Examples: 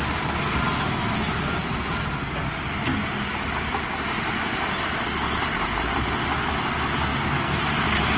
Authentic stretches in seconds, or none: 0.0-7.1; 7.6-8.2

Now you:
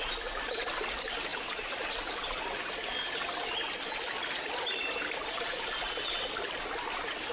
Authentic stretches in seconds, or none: 0.0-1.3; 2.0-7.3

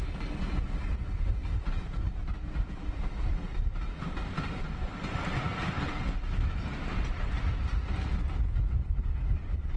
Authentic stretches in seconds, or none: 0.0-9.8

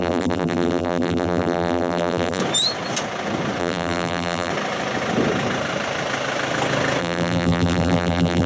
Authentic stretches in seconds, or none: 2.4-3.6; 4.5-7.0

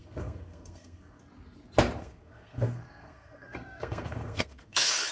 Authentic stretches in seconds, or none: 1.2-2.0

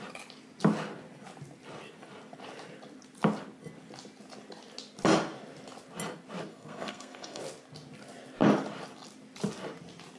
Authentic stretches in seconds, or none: 0.0-6.5; 7.4-10.2